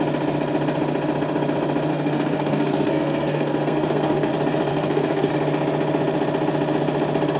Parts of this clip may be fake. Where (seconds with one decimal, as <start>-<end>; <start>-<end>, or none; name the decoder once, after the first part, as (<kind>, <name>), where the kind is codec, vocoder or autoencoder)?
1.9-4.3 (codec, SNAC); 4.7-5.3